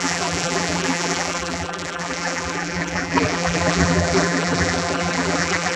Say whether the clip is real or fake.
fake